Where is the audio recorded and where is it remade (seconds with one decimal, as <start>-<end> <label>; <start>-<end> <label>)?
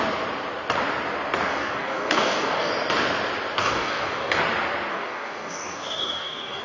0.0-1.5 recorded; 1.5-2.7 remade; 2.7-3.6 recorded; 3.6-4.4 remade; 4.4-4.9 recorded; 4.9-6.6 remade